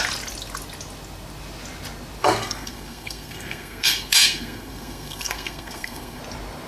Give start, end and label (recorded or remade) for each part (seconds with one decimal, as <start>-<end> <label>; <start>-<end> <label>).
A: 0.0-2.2 recorded; 2.2-6.2 remade; 6.2-6.7 recorded